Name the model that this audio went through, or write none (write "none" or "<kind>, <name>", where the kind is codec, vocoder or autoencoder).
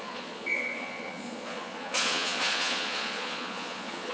vocoder, Vocos